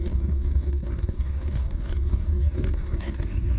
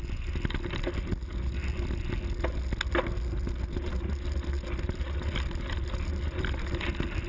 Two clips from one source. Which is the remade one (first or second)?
first